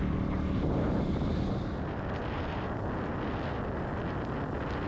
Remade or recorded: recorded